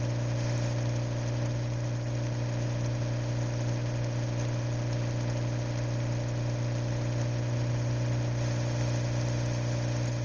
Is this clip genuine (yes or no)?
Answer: yes